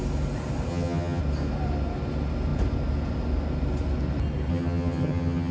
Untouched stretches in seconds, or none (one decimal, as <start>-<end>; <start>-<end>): 0.0-0.7; 1.2-4.5